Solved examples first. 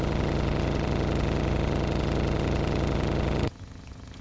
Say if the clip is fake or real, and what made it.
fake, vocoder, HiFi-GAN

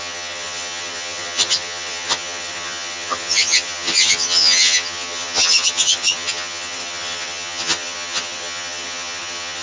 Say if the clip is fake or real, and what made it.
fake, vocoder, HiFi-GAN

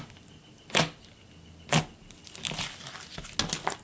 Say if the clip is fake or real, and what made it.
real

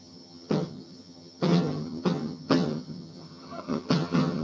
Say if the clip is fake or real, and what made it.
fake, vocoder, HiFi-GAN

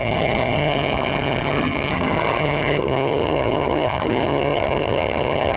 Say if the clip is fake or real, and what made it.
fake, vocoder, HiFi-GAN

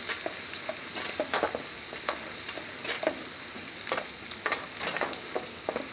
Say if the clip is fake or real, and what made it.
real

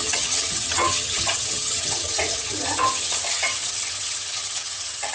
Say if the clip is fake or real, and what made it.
fake, vocoder, HiFi-GAN